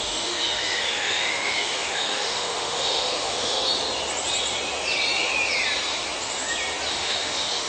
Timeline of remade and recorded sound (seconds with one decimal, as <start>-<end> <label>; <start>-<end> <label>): 0.0-3.6 remade; 3.6-6.9 recorded; 6.9-7.7 remade